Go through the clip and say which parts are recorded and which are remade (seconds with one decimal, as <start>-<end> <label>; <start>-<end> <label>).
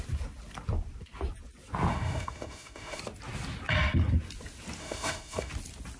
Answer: 0.0-1.9 recorded; 1.9-3.0 remade; 3.0-4.8 recorded; 4.8-5.5 remade; 5.5-6.0 recorded